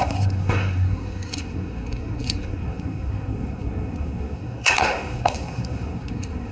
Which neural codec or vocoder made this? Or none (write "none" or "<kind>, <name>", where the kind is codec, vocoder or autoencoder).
codec, SNAC